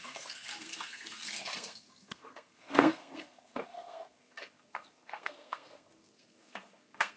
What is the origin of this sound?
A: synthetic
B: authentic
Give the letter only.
A